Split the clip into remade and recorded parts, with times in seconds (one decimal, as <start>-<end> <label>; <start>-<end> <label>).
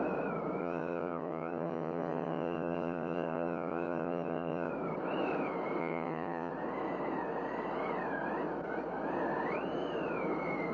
0.0-0.6 recorded; 0.6-4.7 remade; 4.7-5.8 recorded; 5.8-6.5 remade; 6.5-10.7 recorded